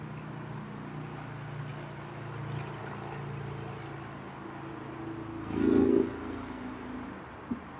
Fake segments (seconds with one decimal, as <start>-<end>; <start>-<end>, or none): 5.3-6.7